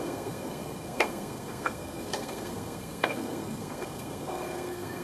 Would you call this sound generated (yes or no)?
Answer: yes